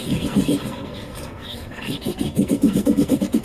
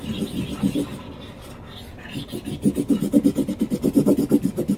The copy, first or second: first